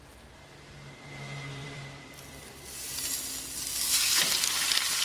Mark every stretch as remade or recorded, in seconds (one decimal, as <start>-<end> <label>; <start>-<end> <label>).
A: 0.0-1.6 recorded; 1.6-3.1 remade; 3.1-5.0 recorded